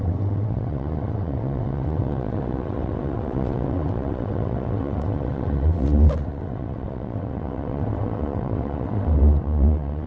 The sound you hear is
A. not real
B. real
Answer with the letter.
A